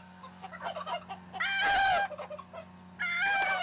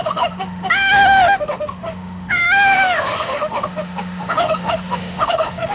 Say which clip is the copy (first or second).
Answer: second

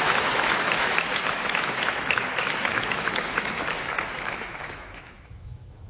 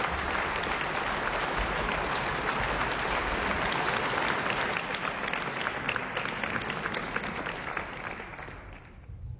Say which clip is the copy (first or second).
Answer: first